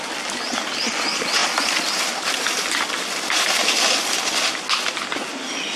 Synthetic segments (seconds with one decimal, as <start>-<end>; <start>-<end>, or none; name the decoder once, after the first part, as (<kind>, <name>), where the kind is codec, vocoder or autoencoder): none